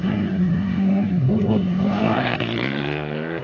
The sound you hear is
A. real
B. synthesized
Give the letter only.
B